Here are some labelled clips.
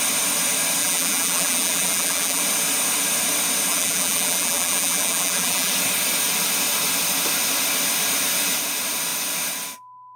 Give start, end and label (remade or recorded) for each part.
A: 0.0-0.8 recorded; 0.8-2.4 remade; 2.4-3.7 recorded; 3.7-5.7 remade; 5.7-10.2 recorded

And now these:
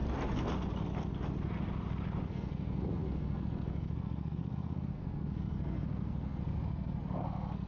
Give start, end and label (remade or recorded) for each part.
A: 0.0-2.3 recorded; 2.3-7.7 remade